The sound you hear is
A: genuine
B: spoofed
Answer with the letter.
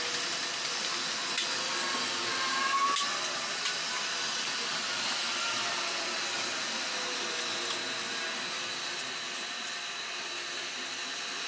A